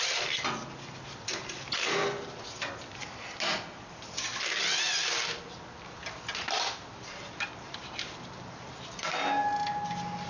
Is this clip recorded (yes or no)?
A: yes